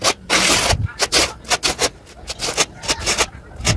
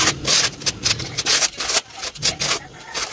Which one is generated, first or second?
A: second